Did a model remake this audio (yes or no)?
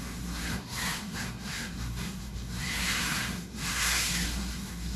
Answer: yes